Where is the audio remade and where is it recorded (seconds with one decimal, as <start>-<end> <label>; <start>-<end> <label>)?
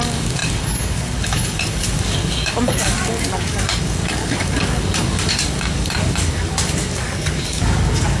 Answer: 0.0-8.2 remade